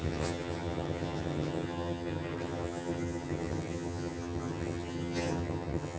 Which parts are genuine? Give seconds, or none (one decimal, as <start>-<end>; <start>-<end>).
none